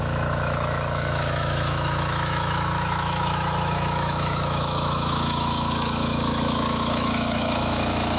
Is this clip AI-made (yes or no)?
yes